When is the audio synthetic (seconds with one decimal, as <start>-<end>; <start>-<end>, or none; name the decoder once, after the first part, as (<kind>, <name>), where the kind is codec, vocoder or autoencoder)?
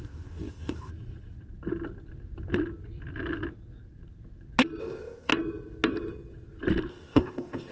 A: 0.0-0.9 (codec, ZipCodec); 4.8-5.3; 6.9-7.7